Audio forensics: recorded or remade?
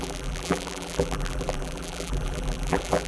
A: remade